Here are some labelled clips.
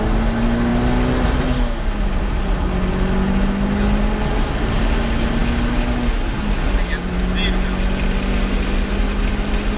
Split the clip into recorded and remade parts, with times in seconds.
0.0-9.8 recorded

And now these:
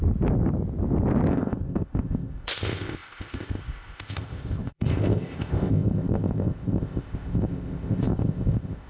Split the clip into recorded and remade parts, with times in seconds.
0.0-1.3 recorded; 1.3-8.9 remade

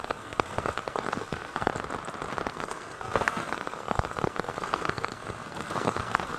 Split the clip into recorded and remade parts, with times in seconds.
0.0-1.7 remade; 1.7-2.5 recorded; 2.5-6.4 remade

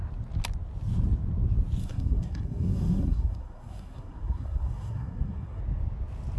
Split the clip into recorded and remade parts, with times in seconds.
0.0-1.8 recorded; 1.8-5.6 remade; 5.6-6.4 recorded

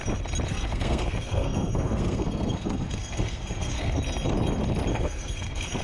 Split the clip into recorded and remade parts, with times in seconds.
0.0-0.5 recorded; 0.5-4.0 remade; 4.0-4.9 recorded; 4.9-5.8 remade